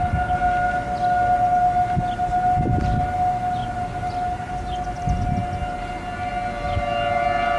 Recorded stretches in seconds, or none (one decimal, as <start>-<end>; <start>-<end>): 0.0-7.6